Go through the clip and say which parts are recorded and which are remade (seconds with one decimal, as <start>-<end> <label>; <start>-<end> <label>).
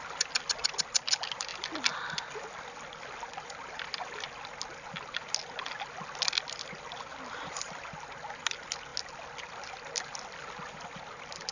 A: 0.0-11.5 recorded